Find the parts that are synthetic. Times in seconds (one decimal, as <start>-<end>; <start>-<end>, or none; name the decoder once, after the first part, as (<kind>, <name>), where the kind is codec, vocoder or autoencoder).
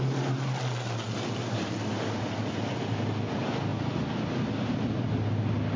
none